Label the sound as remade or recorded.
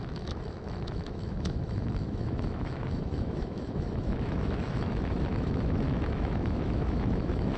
remade